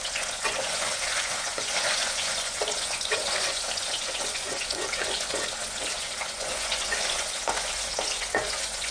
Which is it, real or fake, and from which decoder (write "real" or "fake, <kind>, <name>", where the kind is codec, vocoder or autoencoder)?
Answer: fake, vocoder, Vocos